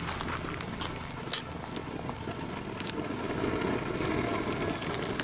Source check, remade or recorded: recorded